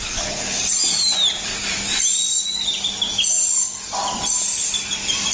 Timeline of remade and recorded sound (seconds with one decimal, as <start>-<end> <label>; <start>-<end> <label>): 0.0-5.3 recorded